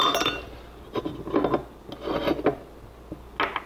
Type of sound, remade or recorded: recorded